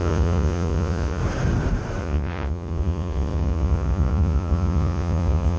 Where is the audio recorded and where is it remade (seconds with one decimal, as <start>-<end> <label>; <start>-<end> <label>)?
0.0-1.2 remade; 1.2-2.0 recorded; 2.0-5.6 remade